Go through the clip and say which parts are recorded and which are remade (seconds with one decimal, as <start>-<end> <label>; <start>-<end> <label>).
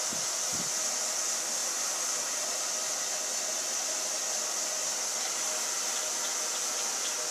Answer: 0.0-7.3 recorded